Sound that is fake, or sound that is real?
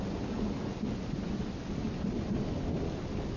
real